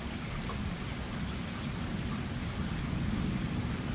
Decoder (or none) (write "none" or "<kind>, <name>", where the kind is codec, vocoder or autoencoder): none